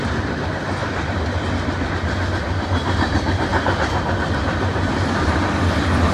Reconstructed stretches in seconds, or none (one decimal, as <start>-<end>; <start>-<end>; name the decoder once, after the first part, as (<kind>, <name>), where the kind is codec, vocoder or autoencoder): 0.0-6.1 (vocoder, BigVGAN v2)